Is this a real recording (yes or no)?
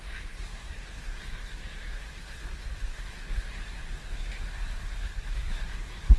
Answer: no